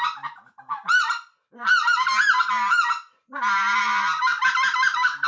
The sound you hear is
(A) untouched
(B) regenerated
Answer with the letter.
A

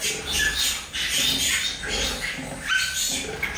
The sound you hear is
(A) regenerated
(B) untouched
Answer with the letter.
B